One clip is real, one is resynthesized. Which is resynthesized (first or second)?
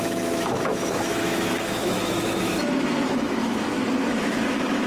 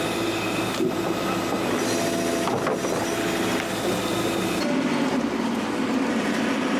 first